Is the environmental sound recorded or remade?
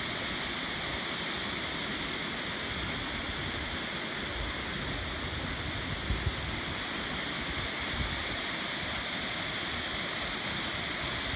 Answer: recorded